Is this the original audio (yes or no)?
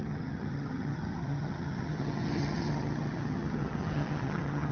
no